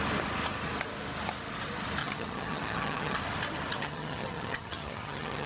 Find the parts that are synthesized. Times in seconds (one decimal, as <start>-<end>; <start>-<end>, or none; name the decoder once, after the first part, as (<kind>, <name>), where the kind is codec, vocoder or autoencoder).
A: 2.0-3.2 (vocoder, HiFi-GAN); 3.8-5.5